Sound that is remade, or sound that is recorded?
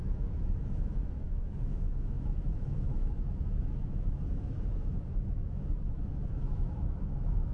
remade